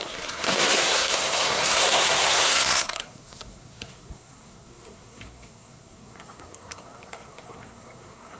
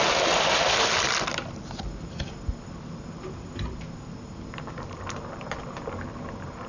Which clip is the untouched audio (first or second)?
second